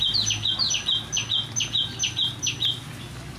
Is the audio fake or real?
real